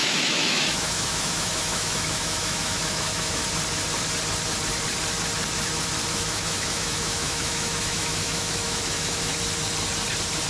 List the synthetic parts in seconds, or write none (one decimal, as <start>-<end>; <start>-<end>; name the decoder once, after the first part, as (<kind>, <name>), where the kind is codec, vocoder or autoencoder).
0.0-3.4 (autoencoder, DAC-VAE); 6.1-9.3